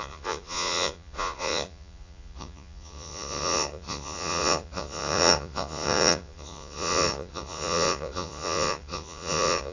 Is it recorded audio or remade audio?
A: remade